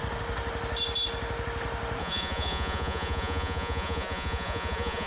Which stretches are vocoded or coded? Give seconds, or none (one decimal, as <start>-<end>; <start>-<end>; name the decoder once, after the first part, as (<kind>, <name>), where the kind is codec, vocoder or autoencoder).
2.0-5.1 (vocoder, Vocos)